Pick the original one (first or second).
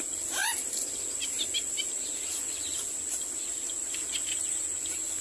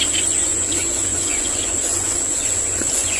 first